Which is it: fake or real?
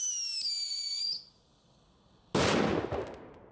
real